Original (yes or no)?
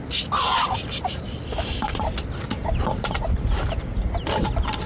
yes